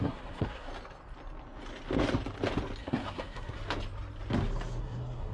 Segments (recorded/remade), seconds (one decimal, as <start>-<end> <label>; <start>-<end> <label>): 0.0-0.7 remade; 0.7-2.8 recorded; 2.8-3.6 remade; 3.6-4.8 recorded; 4.8-5.3 remade